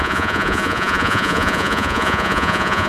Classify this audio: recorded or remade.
remade